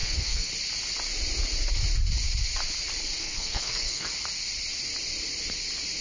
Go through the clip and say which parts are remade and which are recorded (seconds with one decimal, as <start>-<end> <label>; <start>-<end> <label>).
0.0-0.5 remade; 0.5-3.2 recorded; 3.2-4.1 remade; 4.1-6.0 recorded